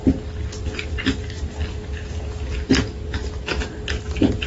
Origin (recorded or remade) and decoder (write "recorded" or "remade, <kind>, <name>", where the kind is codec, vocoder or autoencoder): recorded